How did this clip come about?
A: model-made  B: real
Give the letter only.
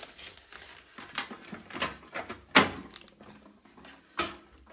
B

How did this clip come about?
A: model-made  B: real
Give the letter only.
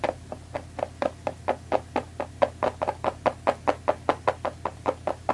B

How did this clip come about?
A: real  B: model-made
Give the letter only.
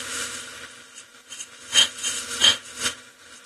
A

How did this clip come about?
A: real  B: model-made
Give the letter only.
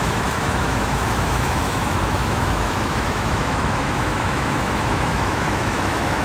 B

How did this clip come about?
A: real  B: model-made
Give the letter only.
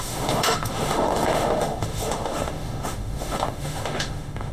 B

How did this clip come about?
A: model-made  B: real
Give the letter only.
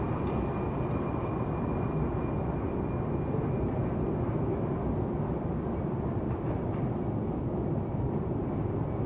B